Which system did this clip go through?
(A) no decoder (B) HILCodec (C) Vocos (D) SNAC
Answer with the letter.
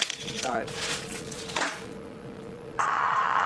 C